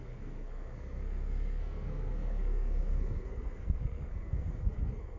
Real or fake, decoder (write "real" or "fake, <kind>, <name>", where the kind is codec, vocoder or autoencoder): fake, codec, SNAC